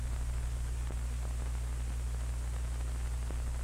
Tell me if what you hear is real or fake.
real